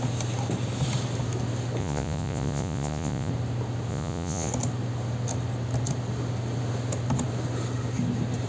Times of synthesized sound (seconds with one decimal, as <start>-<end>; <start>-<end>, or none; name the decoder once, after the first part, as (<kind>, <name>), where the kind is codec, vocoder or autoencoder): 1.8-3.3 (vocoder, Vocos); 3.9-4.5